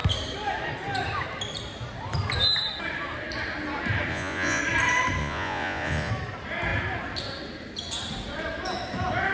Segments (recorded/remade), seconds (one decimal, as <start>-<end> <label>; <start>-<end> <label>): 0.0-4.1 recorded; 4.1-4.6 remade; 4.6-5.2 recorded; 5.2-6.1 remade; 6.1-9.3 recorded